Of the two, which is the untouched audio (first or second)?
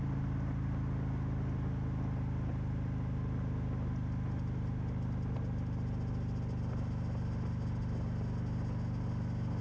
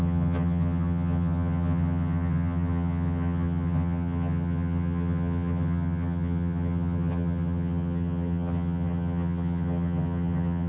first